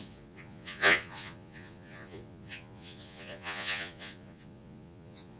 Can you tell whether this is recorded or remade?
remade